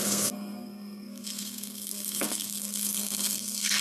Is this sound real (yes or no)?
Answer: no